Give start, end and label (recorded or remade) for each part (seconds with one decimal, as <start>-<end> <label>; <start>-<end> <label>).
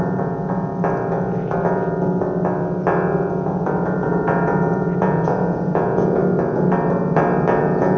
0.0-0.7 remade; 0.7-3.3 recorded; 3.3-6.2 remade; 6.2-7.6 recorded; 7.6-8.0 remade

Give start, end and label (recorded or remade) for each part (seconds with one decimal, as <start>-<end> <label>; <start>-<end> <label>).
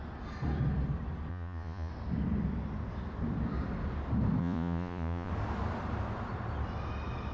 0.0-1.3 recorded; 1.3-1.9 remade; 1.9-4.4 recorded; 4.4-5.3 remade; 5.3-7.3 recorded